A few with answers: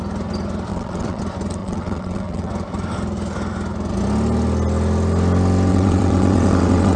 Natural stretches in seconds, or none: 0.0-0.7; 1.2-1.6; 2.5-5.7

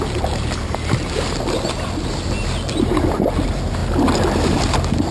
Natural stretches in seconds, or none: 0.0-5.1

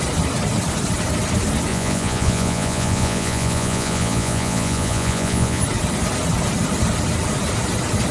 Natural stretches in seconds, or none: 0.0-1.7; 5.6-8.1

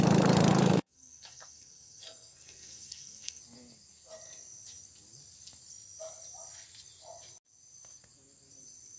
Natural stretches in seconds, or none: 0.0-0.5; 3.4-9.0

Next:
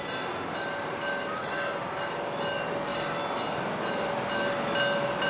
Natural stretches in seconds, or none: 0.0-1.4; 2.1-5.3

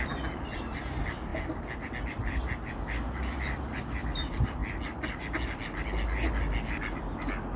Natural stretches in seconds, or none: 0.0-7.6